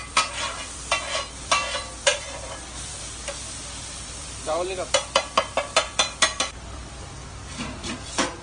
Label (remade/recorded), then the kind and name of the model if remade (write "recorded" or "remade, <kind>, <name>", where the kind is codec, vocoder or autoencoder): remade, vocoder, BigVGAN v2